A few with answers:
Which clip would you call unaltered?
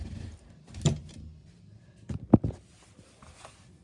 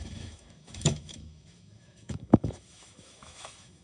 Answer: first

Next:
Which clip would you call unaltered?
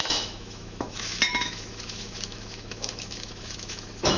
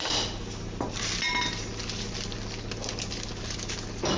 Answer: second